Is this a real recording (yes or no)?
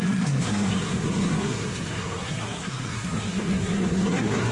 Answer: no